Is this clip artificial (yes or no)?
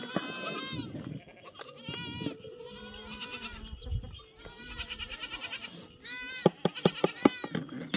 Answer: no